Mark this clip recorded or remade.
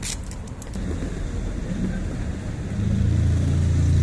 recorded